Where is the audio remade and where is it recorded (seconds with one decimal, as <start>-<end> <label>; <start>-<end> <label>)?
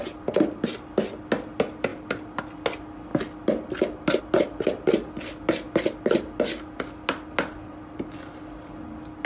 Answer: 0.0-1.9 recorded; 1.9-2.4 remade; 2.4-9.3 recorded